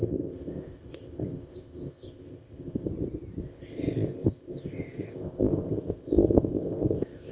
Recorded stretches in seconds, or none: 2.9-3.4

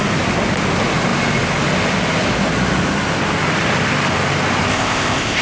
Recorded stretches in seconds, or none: 0.0-4.7

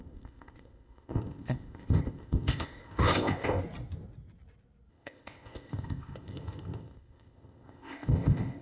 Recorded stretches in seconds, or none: 3.6-4.9